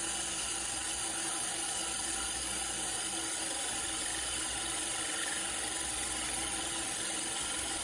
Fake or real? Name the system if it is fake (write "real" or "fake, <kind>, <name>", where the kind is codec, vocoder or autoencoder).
real